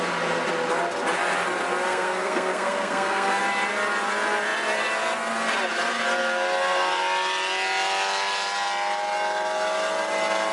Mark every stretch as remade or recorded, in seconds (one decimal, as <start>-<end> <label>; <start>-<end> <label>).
0.0-1.9 recorded; 1.9-3.4 remade; 3.4-10.5 recorded